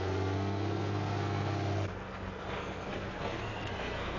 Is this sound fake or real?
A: fake